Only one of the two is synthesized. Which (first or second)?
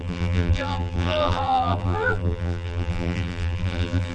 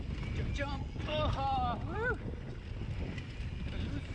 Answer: first